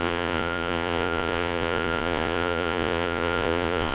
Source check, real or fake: fake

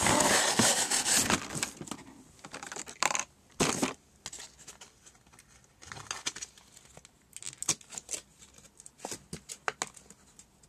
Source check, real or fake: real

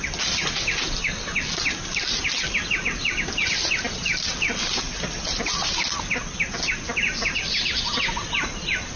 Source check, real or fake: real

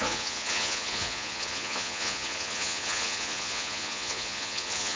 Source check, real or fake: fake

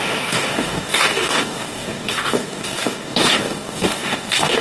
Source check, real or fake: fake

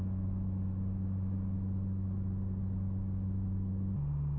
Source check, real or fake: real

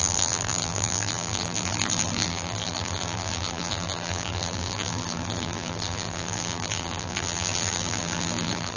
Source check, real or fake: fake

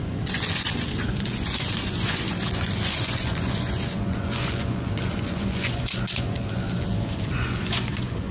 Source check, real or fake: fake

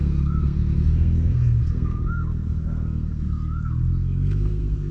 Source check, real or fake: fake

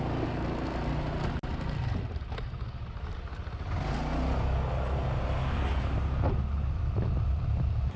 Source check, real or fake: real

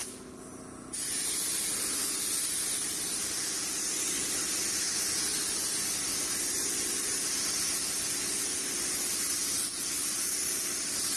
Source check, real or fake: real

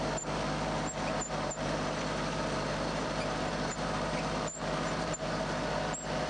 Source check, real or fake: fake